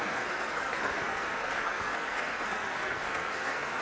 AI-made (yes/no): yes